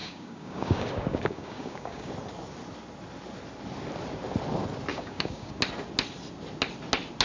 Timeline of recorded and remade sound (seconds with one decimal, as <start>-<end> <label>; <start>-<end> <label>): 0.0-2.1 remade; 2.1-4.9 recorded; 4.9-5.6 remade; 5.6-7.2 recorded